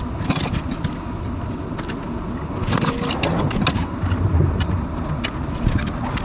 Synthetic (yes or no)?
no